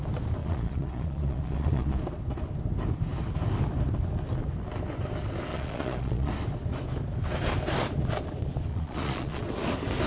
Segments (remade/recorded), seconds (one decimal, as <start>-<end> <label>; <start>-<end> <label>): 0.0-0.4 recorded; 0.4-2.0 remade; 2.0-5.5 recorded; 5.5-6.3 remade; 6.3-8.7 recorded; 8.7-9.4 remade; 9.4-10.1 recorded